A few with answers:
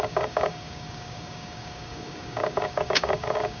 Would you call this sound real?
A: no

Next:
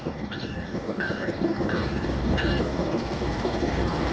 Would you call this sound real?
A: no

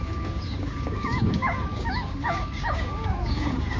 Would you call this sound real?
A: no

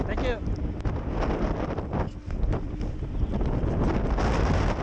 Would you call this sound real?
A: yes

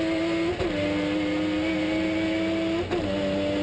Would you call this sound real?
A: yes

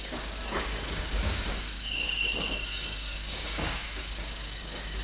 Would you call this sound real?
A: no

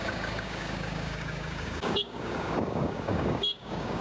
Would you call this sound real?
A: no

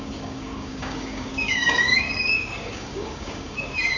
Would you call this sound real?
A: no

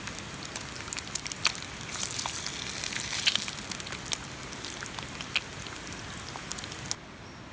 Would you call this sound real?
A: yes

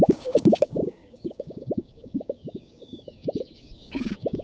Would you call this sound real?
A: no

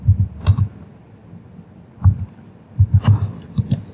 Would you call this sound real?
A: yes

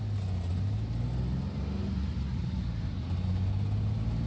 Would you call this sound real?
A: yes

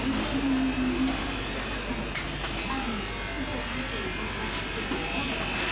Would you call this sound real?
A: yes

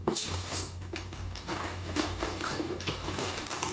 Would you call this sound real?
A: no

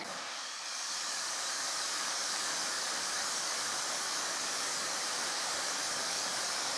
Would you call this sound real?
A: no